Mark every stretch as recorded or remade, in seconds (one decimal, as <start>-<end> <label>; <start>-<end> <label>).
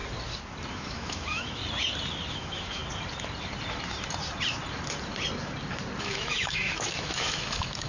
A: 0.0-0.7 recorded; 0.7-1.6 remade; 1.6-2.3 recorded; 2.3-2.8 remade; 2.8-6.0 recorded; 6.0-7.9 remade